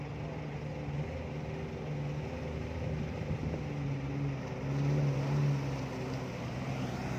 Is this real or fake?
real